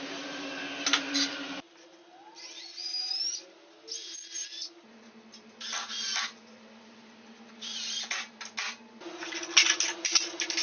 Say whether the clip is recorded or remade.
recorded